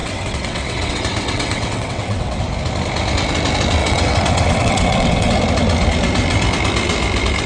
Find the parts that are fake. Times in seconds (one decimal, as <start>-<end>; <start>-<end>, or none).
0.0-2.4; 3.8-5.3